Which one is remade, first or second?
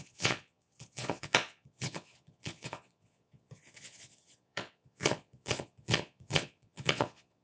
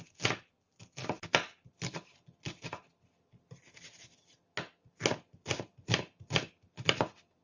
first